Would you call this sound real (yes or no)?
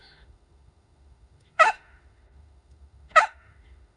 no